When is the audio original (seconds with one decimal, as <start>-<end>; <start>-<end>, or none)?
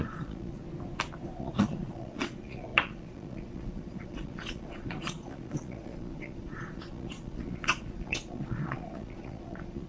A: 0.6-1.4